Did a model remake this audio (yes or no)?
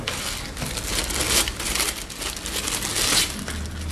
no